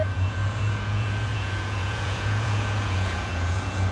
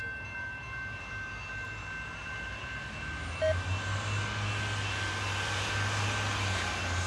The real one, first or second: second